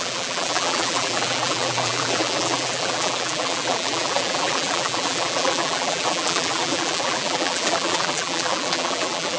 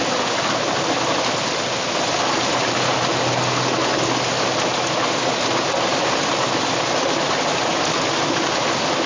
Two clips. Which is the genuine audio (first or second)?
second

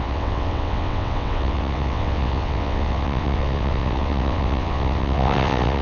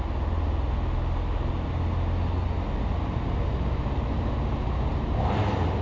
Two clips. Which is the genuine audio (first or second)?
second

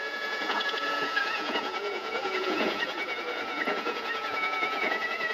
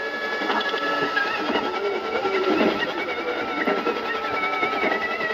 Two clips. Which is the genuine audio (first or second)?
second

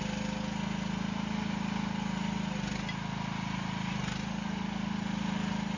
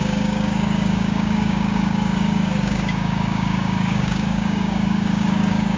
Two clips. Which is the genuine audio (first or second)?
first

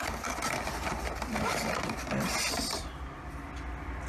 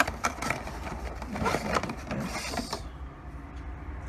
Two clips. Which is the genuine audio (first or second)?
first